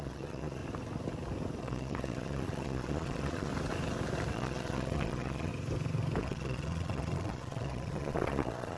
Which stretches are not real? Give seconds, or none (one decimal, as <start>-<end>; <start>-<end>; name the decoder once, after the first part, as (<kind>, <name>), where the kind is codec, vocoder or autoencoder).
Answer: 0.0-0.6 (vocoder, Vocos); 1.6-3.5; 4.3-5.5; 6.2-8.8